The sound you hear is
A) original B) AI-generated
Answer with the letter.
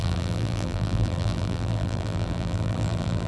B